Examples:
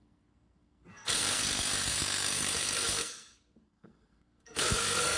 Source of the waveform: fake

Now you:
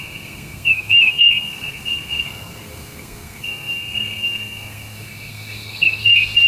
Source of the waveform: fake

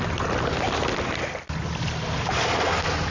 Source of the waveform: real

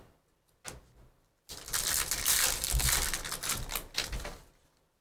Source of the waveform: real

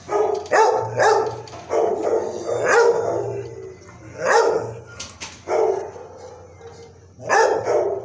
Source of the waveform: real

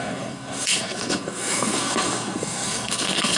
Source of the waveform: fake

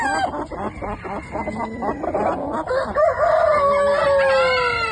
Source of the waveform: real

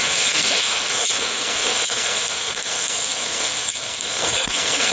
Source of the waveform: fake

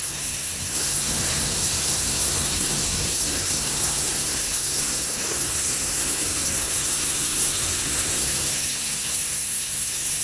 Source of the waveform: fake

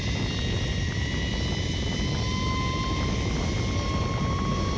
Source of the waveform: real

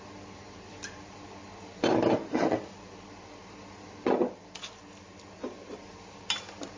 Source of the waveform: real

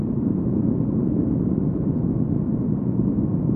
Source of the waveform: real